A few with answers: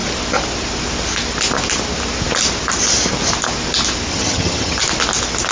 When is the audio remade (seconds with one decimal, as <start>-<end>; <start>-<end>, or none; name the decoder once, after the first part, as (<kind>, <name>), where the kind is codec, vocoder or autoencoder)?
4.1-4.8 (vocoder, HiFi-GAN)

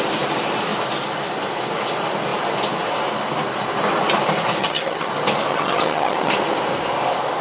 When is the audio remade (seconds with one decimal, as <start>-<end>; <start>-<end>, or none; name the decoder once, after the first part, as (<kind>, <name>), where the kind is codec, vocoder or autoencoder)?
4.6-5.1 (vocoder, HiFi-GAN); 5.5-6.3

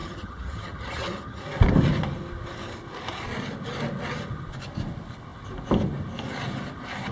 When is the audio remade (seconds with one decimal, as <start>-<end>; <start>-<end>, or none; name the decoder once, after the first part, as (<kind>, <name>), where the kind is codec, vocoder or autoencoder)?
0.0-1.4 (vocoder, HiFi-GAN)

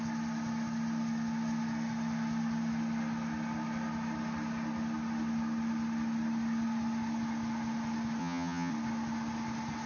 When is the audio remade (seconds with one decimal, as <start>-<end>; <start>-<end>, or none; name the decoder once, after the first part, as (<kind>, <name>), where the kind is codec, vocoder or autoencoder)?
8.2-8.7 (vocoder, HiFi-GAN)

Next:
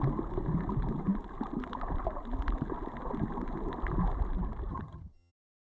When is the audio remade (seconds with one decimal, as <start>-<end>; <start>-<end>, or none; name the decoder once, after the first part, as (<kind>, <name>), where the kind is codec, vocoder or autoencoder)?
4.7-5.3 (vocoder, HiFi-GAN)

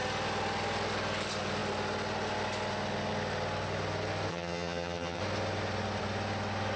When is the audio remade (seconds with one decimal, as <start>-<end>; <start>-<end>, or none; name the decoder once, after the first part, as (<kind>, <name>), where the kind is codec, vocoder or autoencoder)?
4.3-5.2 (vocoder, HiFi-GAN)

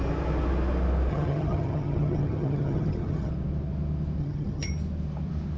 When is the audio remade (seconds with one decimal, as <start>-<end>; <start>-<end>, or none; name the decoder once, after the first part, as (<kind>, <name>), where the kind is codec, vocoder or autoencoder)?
1.1-3.3 (vocoder, HiFi-GAN); 4.2-4.7

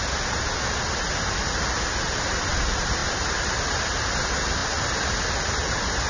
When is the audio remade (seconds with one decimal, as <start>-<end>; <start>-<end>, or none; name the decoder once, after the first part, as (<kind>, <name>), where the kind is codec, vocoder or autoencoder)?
none